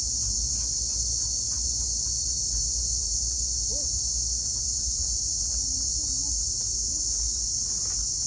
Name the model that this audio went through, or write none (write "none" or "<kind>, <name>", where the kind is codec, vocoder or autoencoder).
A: none